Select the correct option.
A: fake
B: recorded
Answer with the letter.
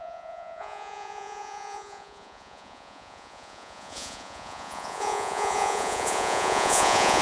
A